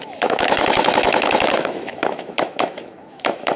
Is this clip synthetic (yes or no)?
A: yes